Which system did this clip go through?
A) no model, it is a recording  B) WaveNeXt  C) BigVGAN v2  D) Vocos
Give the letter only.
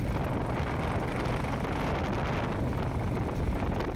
A